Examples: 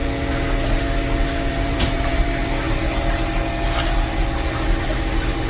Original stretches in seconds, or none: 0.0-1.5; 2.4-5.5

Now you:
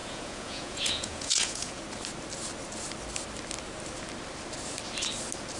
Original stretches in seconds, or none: 1.8-5.6

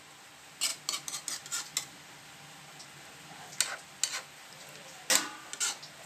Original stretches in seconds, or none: 0.0-6.1

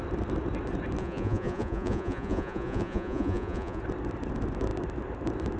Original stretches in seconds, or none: 0.0-1.0; 3.8-5.6

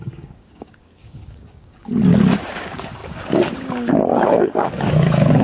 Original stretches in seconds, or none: 1.9-2.5